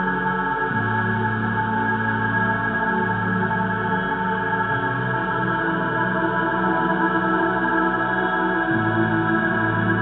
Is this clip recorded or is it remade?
recorded